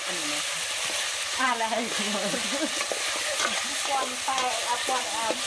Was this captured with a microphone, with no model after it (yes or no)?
yes